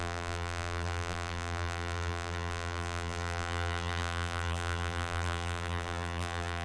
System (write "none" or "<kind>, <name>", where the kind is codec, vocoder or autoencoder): vocoder, BigVGAN v2